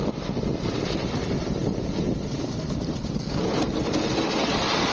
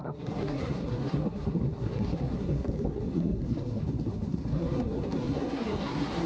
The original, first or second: first